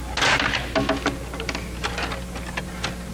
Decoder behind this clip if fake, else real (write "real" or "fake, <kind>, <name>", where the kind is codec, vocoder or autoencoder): real